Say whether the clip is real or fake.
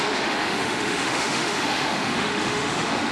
fake